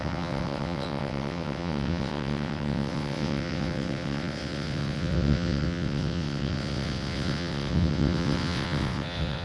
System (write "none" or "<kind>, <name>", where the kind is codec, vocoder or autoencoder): vocoder, WaveNeXt